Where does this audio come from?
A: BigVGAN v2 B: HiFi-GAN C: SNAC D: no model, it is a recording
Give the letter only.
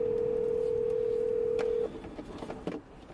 D